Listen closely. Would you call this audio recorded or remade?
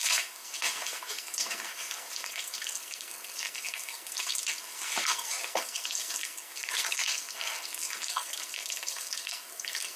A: remade